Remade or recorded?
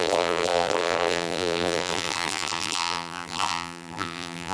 remade